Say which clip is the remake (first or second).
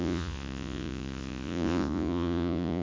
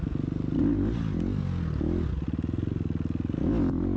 first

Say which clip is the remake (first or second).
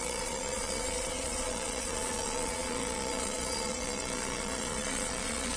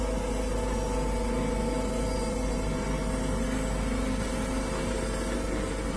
first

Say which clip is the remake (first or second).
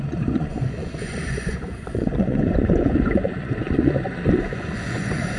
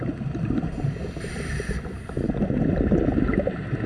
first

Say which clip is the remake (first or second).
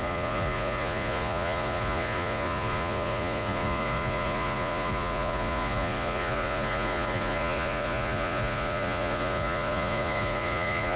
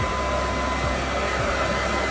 first